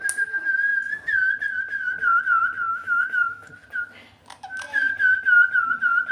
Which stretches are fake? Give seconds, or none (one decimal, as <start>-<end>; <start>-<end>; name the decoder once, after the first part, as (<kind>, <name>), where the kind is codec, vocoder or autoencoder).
2.7-3.5 (autoencoder, DAC-VAE)